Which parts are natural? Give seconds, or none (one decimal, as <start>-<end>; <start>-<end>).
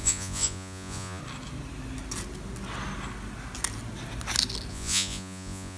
1.2-4.7